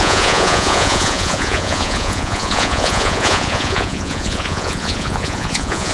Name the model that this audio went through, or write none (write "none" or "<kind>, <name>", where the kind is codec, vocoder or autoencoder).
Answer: vocoder, Vocos